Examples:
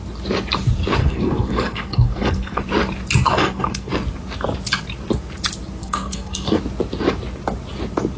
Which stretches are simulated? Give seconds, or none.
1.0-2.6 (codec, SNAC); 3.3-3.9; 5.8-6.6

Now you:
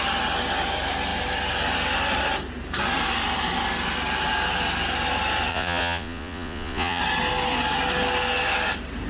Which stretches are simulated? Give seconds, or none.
5.5-7.0 (vocoder, Vocos)